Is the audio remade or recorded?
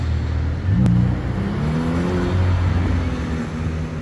recorded